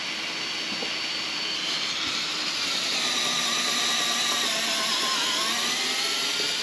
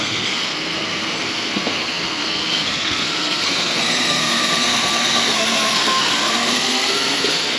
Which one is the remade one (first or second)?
second